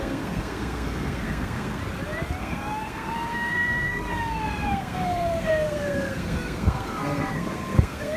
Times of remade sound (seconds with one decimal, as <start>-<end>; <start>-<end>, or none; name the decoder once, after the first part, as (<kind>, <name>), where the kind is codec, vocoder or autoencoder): 0.0-1.8 (codec, SNAC); 2.4-8.2